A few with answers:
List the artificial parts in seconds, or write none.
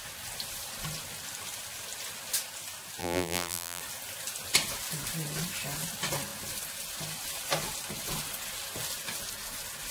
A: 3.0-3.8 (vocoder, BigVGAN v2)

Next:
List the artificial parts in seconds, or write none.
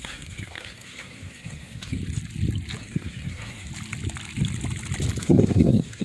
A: 0.0-2.0 (codec, SNAC); 2.8-3.7; 5.2-6.0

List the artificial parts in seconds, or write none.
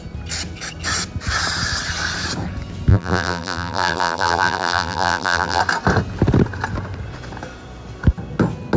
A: 2.9-5.6 (vocoder, BigVGAN v2)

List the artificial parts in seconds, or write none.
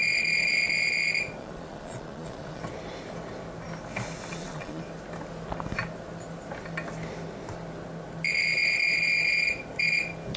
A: 1.4-2.6 (vocoder, Vocos); 4.3-4.8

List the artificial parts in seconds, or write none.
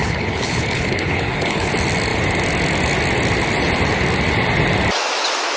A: 0.0-1.7 (codec, HILCodec)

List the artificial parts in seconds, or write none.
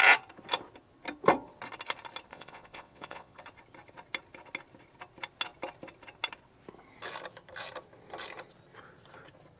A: 2.3-3.4 (vocoder, Vocos)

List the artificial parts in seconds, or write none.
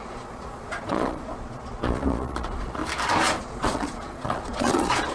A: 0.0-2.8 (vocoder, Vocos); 3.4-5.1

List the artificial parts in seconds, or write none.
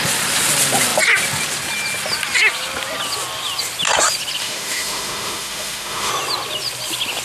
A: 4.4-6.1 (autoencoder, DAC-VAE)